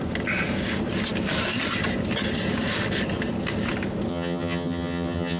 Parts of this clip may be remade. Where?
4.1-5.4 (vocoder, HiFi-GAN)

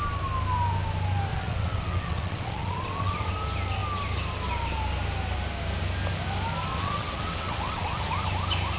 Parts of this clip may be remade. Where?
1.3-3.3 (vocoder, WaveNeXt); 6.7-8.0

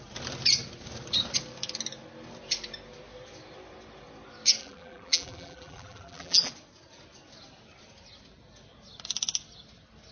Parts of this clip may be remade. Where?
4.6-6.5 (vocoder, BigVGAN v2)